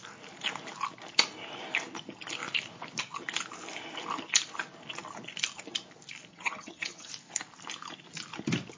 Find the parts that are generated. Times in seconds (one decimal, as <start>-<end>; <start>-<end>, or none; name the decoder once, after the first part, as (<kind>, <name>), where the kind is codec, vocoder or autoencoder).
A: 6.3-7.1 (vocoder, HiFi-GAN)